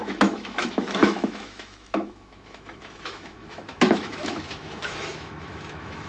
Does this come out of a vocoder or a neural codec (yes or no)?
yes